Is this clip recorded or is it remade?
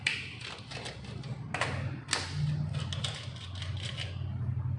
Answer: recorded